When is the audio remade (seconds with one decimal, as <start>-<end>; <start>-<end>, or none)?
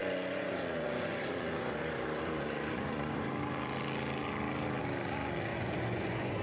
0.0-3.2; 5.5-6.4